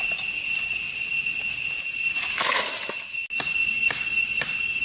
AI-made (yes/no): no